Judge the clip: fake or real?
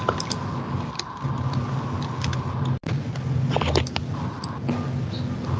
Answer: real